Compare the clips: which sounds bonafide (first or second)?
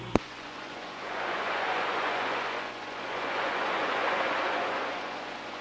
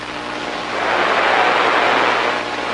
second